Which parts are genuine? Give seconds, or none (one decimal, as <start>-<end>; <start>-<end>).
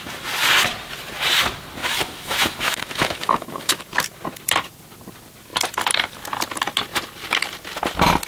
0.0-1.8; 3.8-8.3